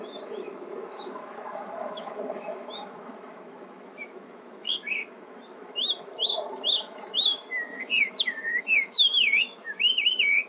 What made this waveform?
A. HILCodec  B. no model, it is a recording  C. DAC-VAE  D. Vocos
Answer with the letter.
C